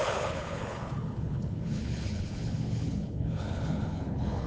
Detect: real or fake fake